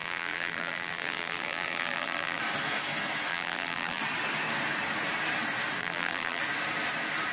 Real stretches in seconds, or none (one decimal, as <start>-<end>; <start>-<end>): 2.4-3.3; 4.0-5.8; 6.4-7.3